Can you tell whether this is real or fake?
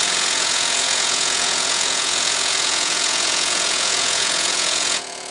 fake